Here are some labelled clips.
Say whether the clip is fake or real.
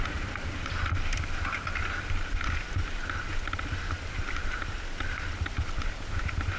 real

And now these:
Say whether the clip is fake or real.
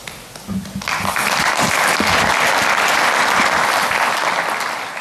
real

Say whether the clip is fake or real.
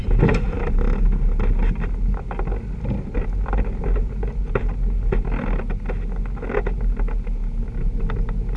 real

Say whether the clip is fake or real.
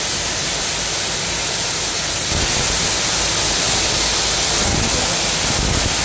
real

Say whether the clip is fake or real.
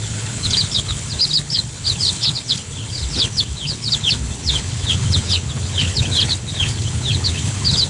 fake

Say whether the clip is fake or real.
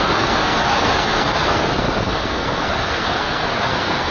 fake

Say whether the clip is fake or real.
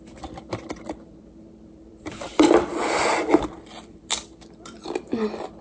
fake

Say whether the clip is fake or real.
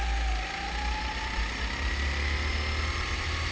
real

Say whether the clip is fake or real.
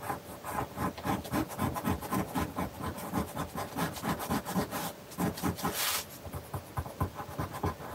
real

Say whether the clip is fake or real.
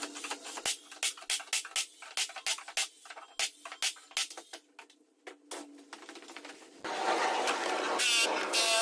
real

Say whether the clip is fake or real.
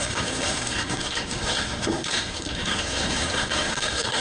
fake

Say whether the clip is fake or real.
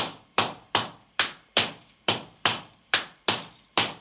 fake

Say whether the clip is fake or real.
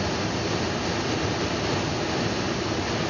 real